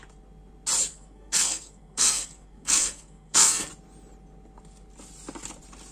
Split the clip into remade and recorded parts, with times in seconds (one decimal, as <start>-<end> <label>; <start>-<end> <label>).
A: 0.0-0.9 recorded; 0.9-3.7 remade; 3.7-5.9 recorded